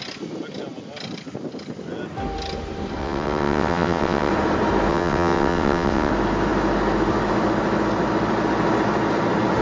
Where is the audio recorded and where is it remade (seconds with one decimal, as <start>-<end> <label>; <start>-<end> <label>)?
0.0-3.0 recorded; 3.0-4.3 remade; 4.3-4.9 recorded; 4.9-6.1 remade; 6.1-9.6 recorded

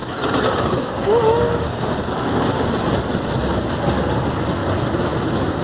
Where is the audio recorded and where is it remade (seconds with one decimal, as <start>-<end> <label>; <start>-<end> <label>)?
0.0-2.4 remade; 2.4-5.6 recorded

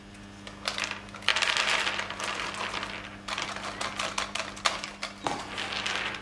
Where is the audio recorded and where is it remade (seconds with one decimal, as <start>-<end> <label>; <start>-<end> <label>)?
0.0-6.2 recorded

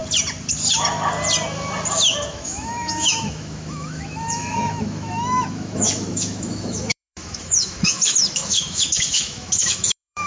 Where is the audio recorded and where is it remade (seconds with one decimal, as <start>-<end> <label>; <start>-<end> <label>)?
0.0-2.3 recorded; 2.3-10.3 remade